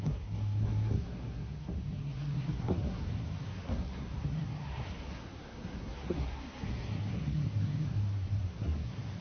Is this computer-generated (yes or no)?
yes